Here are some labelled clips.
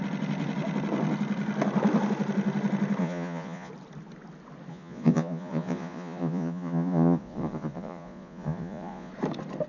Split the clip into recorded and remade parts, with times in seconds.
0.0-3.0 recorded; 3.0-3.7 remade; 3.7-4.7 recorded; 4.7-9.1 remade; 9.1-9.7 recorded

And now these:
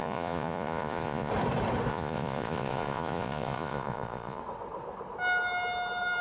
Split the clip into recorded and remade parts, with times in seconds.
0.0-1.3 remade; 1.3-1.9 recorded; 1.9-4.4 remade; 4.4-6.2 recorded

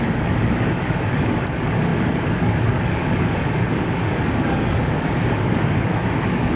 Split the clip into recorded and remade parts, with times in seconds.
0.0-6.6 remade